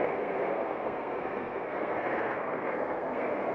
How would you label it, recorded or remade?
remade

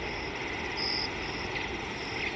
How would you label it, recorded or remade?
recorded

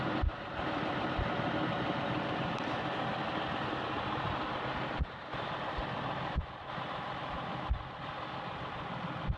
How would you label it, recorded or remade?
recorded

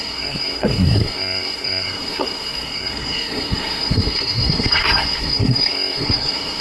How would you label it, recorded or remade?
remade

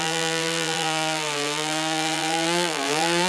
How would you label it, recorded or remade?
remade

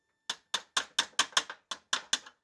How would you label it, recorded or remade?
recorded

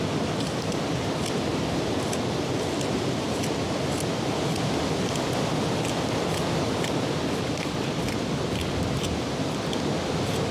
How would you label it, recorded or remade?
recorded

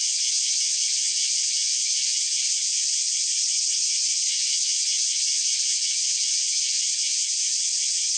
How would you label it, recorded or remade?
remade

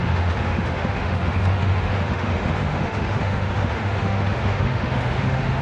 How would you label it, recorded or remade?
remade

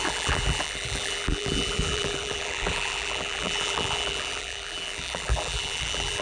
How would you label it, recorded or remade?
remade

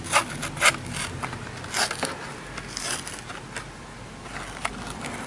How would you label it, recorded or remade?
recorded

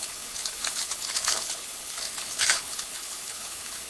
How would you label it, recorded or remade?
remade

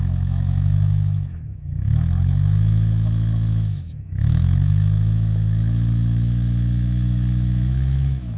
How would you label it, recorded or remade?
remade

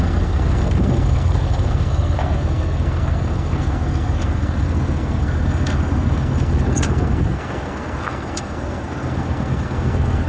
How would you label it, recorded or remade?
remade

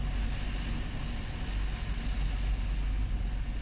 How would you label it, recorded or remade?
recorded